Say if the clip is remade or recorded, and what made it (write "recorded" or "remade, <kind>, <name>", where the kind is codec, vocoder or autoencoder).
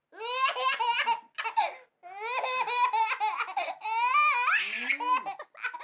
recorded